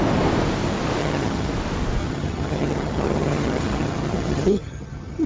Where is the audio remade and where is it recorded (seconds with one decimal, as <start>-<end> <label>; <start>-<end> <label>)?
0.0-1.0 recorded; 1.0-1.5 remade; 1.5-2.0 recorded; 2.0-5.3 remade